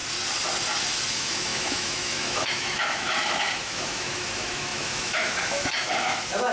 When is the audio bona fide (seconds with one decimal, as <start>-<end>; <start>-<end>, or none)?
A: 0.0-1.1